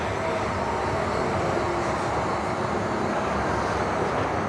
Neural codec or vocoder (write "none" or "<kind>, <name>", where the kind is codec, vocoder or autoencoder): none